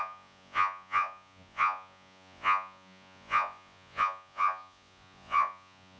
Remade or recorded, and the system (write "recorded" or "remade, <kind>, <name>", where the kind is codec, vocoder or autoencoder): remade, vocoder, Vocos